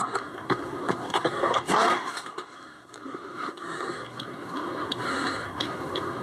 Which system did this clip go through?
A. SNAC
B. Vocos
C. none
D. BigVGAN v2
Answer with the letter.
A